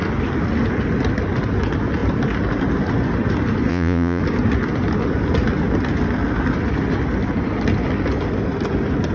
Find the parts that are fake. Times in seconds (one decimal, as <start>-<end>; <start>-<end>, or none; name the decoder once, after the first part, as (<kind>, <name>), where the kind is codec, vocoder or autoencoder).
3.7-4.2 (vocoder, Vocos)